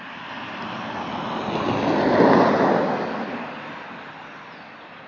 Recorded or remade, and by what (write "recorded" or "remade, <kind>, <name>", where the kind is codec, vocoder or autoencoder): recorded